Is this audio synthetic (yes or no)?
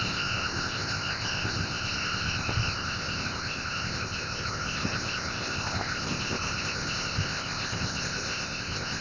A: yes